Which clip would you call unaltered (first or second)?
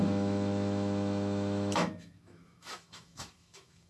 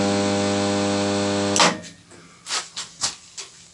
second